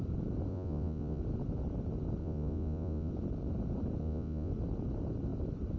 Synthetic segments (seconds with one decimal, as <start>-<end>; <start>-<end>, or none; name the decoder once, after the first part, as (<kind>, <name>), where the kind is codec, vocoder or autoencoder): 0.5-1.2 (vocoder, Vocos); 2.2-3.1; 4.0-4.5